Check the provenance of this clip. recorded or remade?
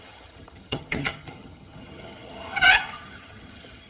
remade